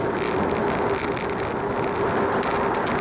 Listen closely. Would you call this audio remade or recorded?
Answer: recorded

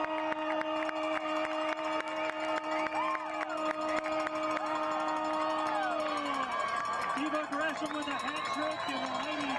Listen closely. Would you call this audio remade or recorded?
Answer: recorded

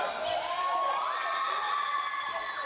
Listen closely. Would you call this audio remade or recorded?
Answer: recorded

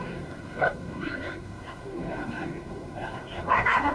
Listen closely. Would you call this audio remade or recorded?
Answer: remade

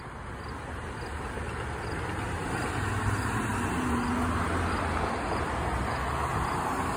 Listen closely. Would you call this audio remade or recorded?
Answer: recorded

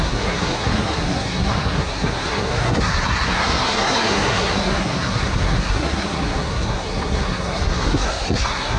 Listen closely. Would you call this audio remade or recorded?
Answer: remade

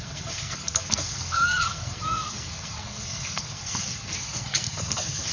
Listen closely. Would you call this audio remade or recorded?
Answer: remade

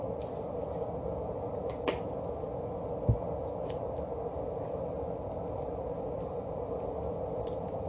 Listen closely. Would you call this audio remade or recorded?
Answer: recorded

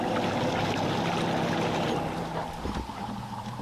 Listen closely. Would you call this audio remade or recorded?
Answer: recorded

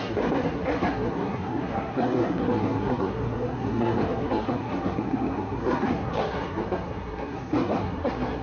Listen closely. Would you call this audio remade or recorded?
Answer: remade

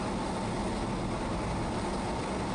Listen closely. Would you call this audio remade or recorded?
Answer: recorded